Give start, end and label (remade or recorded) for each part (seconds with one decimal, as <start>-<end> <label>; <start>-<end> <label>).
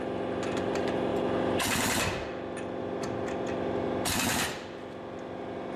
0.0-5.8 recorded